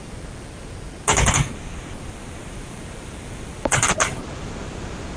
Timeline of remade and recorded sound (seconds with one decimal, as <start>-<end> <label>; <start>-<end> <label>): 0.0-1.1 remade; 1.1-2.4 recorded; 2.4-5.2 remade